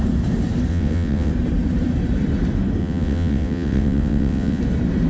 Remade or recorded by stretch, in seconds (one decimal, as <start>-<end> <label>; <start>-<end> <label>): 0.0-0.7 recorded; 0.7-1.3 remade; 1.3-2.8 recorded; 2.8-4.6 remade; 4.6-5.1 recorded